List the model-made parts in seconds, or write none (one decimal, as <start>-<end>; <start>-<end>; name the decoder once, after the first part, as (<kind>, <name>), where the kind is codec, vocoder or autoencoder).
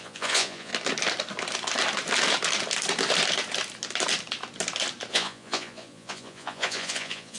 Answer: 0.0-0.7 (vocoder, Vocos); 5.1-7.4